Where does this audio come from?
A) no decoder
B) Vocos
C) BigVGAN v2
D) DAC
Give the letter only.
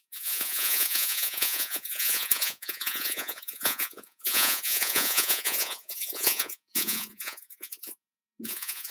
B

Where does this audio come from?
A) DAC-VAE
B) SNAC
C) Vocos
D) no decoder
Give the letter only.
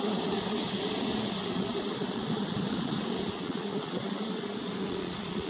C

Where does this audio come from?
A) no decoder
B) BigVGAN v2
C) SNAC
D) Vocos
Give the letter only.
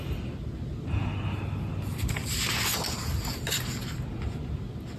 A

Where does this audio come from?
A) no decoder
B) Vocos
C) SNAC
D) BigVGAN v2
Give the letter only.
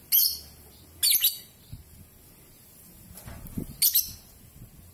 A